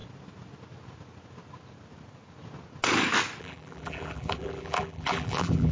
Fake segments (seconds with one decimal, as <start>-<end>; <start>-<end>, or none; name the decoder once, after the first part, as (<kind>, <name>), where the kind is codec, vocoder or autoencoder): 3.4-5.7 (vocoder, BigVGAN v2)